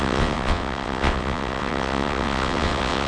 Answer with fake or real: fake